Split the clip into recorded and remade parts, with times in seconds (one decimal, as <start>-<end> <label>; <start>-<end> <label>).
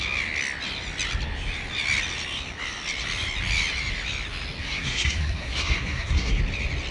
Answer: 0.0-4.6 recorded; 4.6-6.4 remade; 6.4-6.9 recorded